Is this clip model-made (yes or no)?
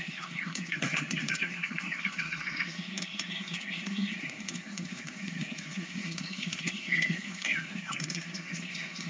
yes